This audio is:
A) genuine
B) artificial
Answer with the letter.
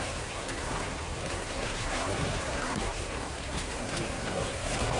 B